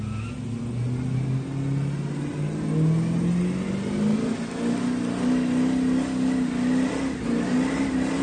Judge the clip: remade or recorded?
recorded